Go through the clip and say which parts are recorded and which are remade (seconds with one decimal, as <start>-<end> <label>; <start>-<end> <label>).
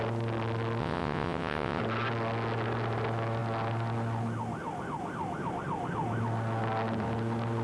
0.0-0.8 recorded; 0.8-1.8 remade; 1.8-7.6 recorded